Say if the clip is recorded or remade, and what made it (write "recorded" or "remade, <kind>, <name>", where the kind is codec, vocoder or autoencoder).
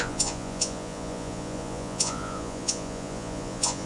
remade, vocoder, Vocos